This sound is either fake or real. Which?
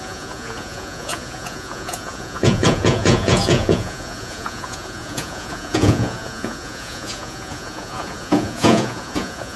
fake